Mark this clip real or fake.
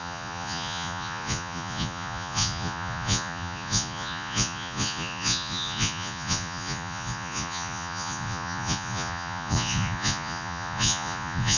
fake